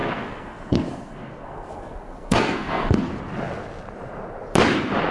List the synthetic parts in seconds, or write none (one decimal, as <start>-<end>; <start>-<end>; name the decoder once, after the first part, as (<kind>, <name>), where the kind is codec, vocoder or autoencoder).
0.0-3.1 (codec, SNAC)